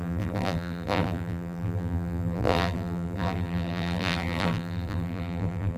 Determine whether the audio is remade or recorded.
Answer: remade